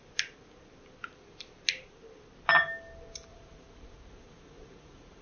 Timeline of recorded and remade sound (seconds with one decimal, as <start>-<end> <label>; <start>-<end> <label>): 0.0-3.3 recorded; 3.3-5.2 remade